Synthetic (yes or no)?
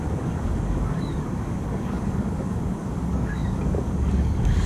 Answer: yes